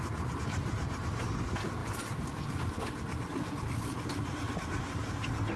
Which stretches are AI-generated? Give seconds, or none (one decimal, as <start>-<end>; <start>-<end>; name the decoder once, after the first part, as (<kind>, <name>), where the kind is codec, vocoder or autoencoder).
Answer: none